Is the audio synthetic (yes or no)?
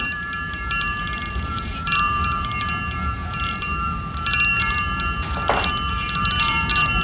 yes